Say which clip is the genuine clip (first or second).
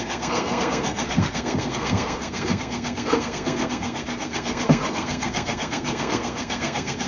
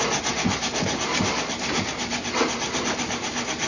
second